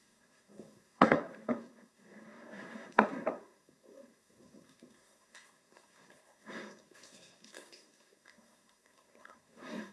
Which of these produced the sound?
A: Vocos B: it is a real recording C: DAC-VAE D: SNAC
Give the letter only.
D